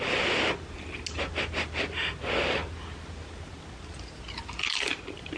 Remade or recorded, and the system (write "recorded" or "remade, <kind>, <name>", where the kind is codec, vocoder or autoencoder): recorded